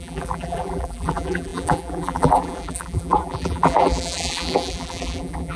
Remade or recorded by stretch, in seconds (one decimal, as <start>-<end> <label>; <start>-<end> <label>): 0.0-5.6 remade